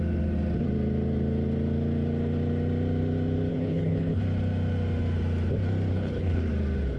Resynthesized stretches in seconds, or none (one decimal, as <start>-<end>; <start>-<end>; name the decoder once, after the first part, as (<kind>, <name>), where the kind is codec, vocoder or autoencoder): 3.5-4.2 (codec, HILCodec); 5.9-6.5